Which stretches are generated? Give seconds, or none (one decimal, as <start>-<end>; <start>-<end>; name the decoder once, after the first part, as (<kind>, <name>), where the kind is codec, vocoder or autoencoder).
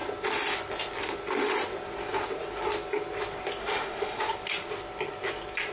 3.6-4.2 (autoencoder, DAC-VAE)